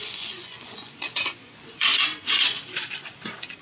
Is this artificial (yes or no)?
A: yes